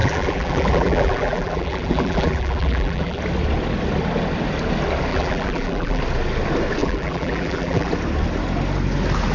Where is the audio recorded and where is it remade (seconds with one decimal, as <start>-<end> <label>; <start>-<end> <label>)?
0.0-3.2 remade; 3.2-5.1 recorded; 5.1-6.0 remade; 6.0-6.8 recorded; 6.8-7.9 remade; 7.9-9.3 recorded